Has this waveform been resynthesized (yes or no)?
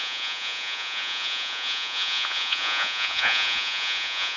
yes